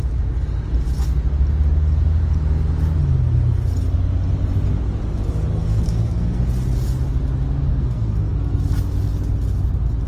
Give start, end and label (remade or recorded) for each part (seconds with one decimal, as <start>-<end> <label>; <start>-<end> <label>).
0.0-5.5 recorded; 5.5-6.4 remade; 6.4-7.7 recorded; 7.7-8.7 remade; 8.7-10.1 recorded